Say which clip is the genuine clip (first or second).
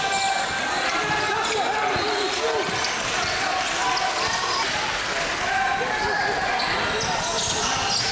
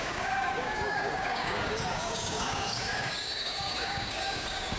first